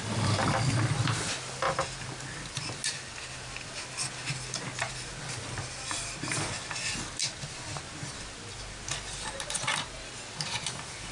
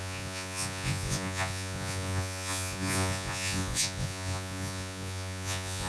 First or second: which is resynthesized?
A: second